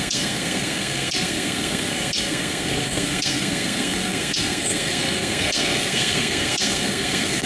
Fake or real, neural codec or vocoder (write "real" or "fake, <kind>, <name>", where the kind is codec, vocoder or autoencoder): fake, codec, SNAC